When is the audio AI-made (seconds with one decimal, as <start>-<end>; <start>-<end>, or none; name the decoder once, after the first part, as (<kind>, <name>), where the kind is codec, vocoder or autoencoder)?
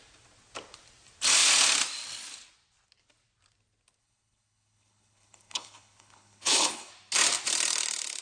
4.0-6.9 (codec, HILCodec)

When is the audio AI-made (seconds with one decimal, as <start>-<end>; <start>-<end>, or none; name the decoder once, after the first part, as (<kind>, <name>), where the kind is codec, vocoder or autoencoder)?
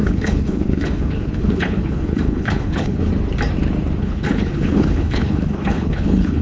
0.0-3.1 (codec, HILCodec); 4.0-6.4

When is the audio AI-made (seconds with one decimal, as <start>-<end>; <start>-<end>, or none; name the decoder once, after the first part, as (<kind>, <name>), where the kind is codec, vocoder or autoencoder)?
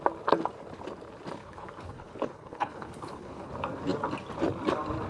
1.4-3.5 (codec, HILCodec)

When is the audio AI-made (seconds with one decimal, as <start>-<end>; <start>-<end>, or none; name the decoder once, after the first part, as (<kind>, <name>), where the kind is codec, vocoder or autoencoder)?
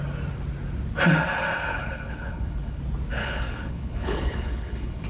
1.7-2.8 (codec, HILCodec); 3.2-5.1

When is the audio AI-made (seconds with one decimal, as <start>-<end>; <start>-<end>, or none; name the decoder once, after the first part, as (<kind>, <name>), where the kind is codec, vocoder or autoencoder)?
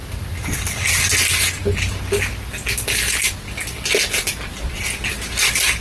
none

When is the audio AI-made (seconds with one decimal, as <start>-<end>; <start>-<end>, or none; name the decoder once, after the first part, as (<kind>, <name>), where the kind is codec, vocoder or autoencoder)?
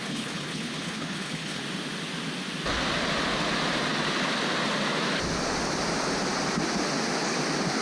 0.0-1.6 (codec, HILCodec)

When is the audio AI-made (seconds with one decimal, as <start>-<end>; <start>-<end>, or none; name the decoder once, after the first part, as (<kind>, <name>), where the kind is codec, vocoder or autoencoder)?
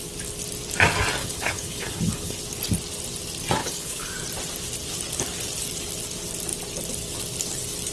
1.2-2.4 (codec, HILCodec); 3.6-4.1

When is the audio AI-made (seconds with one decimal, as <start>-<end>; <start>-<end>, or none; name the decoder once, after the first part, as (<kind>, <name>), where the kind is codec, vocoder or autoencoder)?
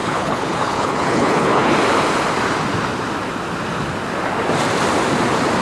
0.0-1.7 (codec, HILCodec)